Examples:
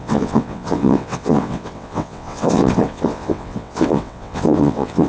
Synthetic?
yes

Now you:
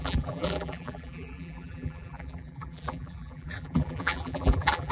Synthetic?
yes